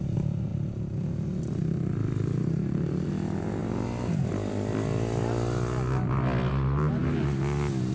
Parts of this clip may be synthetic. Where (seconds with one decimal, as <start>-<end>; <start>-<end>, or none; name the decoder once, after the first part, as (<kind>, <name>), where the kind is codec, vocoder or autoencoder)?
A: none